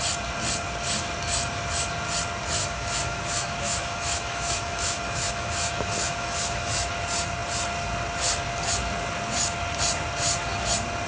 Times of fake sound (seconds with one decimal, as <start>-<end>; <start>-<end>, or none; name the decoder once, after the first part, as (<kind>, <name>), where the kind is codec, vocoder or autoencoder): 2.6-6.9 (autoencoder, DAC-VAE)